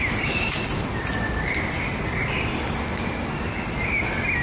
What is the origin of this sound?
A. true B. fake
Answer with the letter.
A